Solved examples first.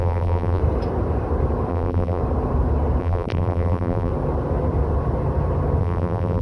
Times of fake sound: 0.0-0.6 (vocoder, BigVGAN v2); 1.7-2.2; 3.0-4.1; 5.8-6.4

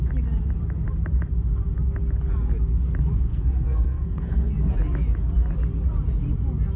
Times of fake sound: 3.3-4.5 (codec, SNAC)